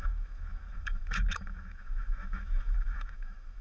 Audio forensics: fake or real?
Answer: fake